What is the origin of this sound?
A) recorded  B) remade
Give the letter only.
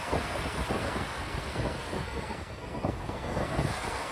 B